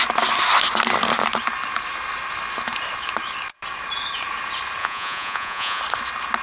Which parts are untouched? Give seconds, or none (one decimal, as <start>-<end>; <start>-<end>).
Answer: 0.0-4.8; 5.8-6.4